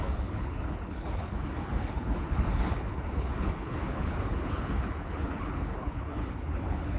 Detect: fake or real fake